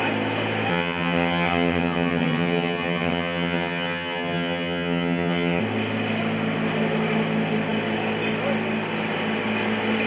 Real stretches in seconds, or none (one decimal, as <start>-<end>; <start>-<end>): 0.0-0.7; 5.6-10.1